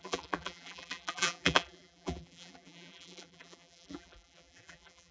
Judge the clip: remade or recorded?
remade